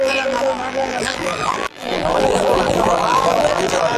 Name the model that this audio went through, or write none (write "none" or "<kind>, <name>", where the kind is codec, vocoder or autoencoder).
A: vocoder, BigVGAN v2